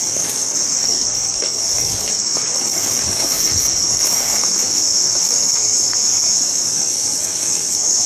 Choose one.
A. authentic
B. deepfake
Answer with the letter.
B